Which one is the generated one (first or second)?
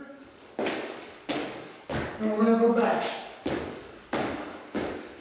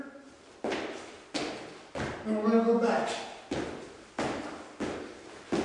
first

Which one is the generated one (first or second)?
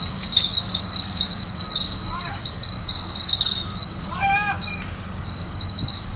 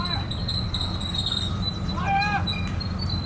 first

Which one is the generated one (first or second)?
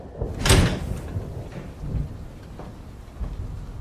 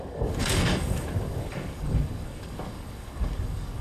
second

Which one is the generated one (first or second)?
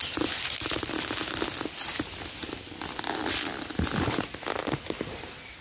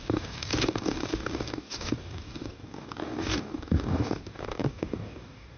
second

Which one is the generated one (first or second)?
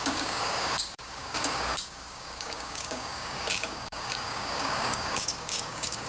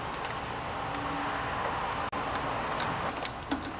first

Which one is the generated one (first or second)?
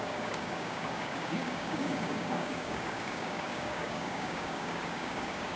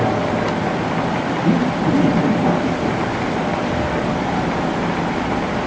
first